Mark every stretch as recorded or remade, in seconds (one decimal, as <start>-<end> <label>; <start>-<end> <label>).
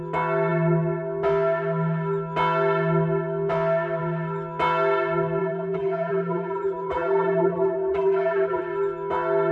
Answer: 0.0-5.4 recorded; 5.4-8.6 remade; 8.6-9.5 recorded